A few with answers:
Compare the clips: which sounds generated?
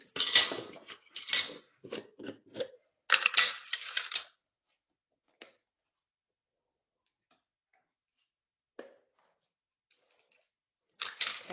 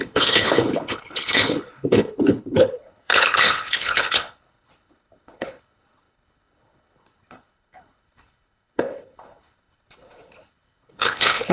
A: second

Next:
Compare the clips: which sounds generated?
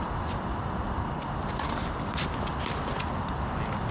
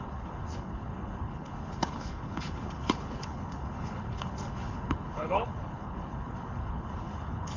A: second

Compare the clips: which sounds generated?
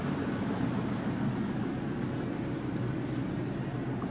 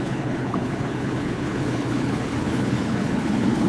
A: second